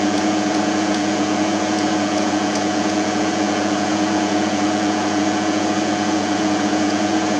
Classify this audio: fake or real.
fake